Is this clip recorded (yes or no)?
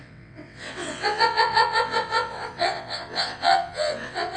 no